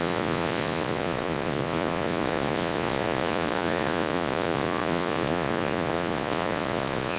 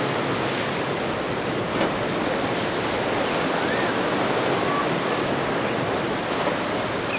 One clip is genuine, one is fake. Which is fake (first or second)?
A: first